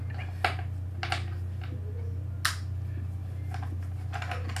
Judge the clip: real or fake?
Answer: real